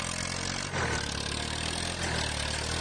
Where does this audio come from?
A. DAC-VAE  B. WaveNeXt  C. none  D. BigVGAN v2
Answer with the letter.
C